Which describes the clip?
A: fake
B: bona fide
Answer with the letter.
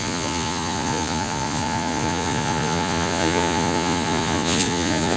A